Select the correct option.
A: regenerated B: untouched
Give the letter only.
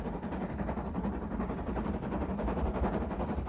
A